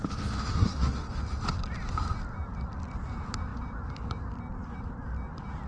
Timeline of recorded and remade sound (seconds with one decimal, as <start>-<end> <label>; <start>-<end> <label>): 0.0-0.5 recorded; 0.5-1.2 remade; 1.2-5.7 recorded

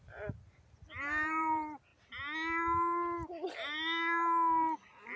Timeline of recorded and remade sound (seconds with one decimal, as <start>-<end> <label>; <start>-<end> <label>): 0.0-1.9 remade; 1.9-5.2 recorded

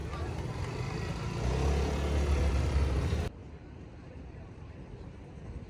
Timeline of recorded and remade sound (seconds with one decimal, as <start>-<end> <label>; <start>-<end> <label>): 0.0-2.4 recorded; 2.4-3.4 remade; 3.4-4.1 recorded; 4.1-5.7 remade

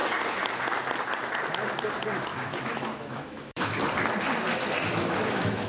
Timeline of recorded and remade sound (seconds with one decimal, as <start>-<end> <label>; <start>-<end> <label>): 0.0-2.3 recorded; 2.3-3.7 remade; 3.7-4.9 recorded; 4.9-5.7 remade

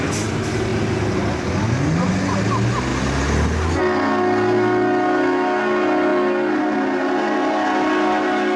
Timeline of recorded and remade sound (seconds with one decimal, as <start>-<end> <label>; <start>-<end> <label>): 0.0-8.6 recorded

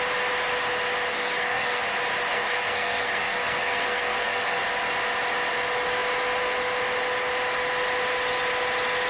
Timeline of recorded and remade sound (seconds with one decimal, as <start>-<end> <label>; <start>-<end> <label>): 0.0-1.1 recorded; 1.1-1.8 remade; 1.8-2.3 recorded; 2.3-4.6 remade; 4.6-9.1 recorded